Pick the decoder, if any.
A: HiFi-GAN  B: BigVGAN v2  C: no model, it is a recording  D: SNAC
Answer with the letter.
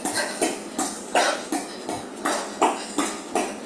C